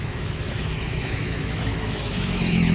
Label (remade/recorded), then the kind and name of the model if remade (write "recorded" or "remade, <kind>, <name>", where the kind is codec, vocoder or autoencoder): remade, autoencoder, DAC-VAE